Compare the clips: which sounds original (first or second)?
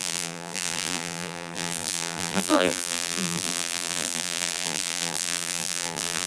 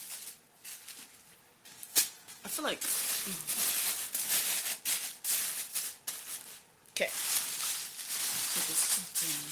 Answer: second